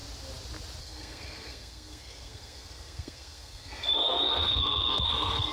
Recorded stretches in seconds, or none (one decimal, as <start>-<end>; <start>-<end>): 0.0-0.8